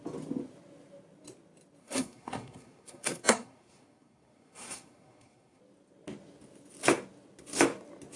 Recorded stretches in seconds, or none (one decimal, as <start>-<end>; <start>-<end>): 0.0-1.8; 5.6-8.2